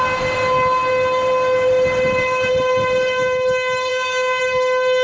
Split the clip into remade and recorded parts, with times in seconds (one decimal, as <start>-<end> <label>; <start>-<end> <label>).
0.0-3.9 recorded; 3.9-4.4 remade; 4.4-5.0 recorded